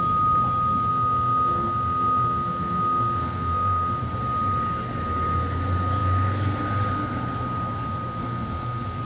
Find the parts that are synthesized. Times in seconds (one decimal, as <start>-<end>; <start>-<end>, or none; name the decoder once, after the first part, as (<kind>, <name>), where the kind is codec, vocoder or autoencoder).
0.9-4.0 (autoencoder, DAC-VAE); 8.2-9.0